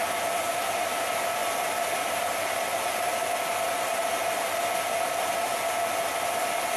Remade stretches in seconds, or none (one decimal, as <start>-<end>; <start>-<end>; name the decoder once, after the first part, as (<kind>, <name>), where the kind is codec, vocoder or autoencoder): none